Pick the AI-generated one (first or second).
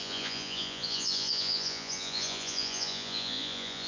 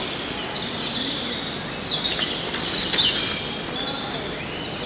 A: first